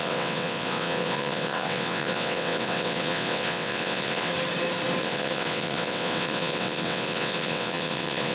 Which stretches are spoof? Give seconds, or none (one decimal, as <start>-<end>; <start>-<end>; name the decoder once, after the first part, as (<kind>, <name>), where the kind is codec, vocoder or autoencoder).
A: 0.0-4.3 (vocoder, WaveNeXt); 5.0-8.3